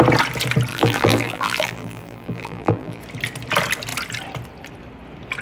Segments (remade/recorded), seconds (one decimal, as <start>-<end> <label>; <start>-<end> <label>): 0.0-0.7 recorded; 0.7-3.0 remade; 3.0-5.4 recorded